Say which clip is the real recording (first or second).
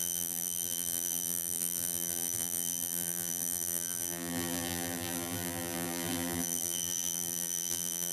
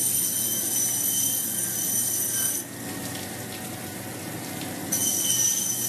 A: second